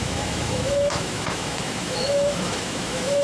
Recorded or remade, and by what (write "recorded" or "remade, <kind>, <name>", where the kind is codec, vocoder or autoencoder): remade, autoencoder, DAC-VAE